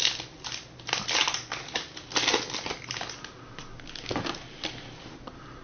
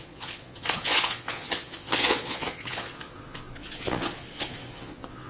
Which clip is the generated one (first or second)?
second